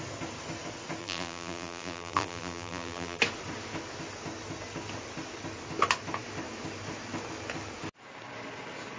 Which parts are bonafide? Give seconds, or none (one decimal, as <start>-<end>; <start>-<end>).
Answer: 0.0-1.0; 3.2-9.0